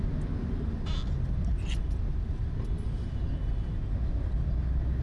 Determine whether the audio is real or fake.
real